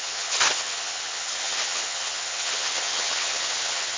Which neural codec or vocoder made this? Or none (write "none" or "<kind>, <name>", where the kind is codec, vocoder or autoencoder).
vocoder, HiFi-GAN